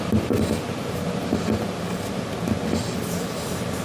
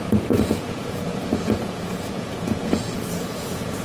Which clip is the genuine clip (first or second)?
first